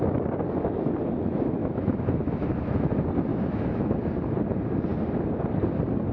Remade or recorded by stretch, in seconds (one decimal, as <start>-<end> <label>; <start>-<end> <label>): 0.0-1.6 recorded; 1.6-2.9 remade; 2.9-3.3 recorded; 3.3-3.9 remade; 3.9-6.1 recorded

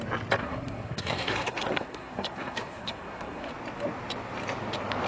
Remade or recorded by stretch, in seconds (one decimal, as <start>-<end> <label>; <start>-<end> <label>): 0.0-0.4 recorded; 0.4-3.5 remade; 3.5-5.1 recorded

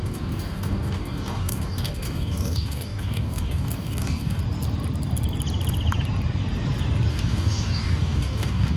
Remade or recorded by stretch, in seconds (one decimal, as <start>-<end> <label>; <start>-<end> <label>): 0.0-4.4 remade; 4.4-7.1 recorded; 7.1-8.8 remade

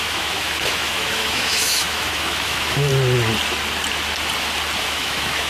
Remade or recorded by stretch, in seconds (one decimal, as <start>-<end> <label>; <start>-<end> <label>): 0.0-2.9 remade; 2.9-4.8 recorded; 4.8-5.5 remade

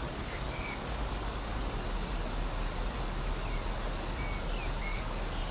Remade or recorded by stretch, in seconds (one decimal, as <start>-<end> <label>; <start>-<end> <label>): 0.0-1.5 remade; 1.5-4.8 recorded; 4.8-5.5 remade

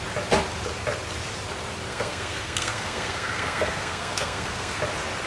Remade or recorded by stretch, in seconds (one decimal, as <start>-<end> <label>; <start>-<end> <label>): 0.0-1.9 recorded; 1.9-4.8 remade; 4.8-5.3 recorded

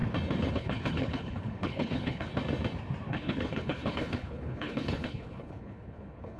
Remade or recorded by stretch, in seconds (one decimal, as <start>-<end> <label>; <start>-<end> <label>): 0.0-0.5 recorded; 0.5-2.3 remade; 2.3-3.1 recorded; 3.1-6.4 remade